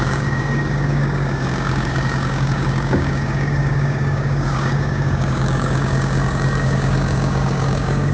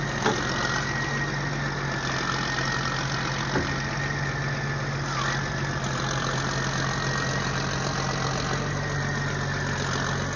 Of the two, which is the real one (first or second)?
second